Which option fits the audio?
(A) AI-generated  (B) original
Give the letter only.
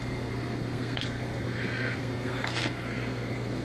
A